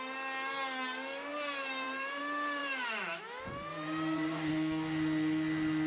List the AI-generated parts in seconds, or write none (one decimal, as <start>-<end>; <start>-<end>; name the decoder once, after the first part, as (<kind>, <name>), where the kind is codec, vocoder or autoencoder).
1.3-2.2 (vocoder, BigVGAN v2); 3.7-4.5